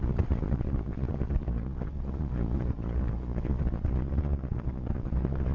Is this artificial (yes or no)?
yes